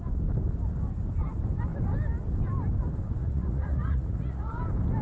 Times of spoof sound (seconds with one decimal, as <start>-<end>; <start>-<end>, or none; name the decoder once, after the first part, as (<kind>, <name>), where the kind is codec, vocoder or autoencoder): 3.2-4.6 (vocoder, Vocos)